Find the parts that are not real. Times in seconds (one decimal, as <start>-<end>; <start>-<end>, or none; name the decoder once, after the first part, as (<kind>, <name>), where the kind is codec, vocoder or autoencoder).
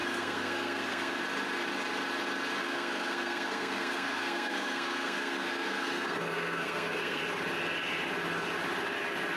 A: 0.0-1.2 (codec, SNAC); 2.6-7.2